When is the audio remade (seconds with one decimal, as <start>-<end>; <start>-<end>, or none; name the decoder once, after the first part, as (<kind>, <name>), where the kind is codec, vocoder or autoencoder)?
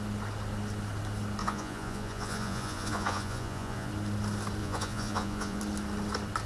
1.4-3.9 (vocoder, Vocos); 4.6-5.6